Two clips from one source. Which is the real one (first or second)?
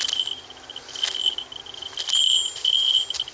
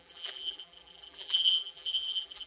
first